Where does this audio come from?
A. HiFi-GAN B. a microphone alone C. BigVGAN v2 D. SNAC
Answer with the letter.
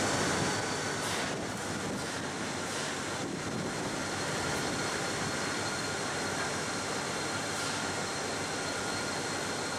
C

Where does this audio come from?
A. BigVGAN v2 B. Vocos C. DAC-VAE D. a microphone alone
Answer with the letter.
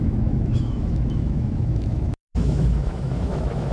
C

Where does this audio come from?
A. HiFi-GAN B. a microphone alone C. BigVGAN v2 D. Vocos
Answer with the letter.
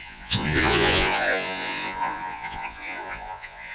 D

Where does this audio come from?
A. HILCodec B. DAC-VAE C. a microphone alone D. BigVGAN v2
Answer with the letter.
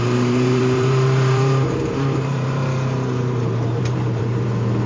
D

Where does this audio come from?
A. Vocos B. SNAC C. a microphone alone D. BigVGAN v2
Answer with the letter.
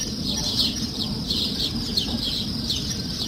C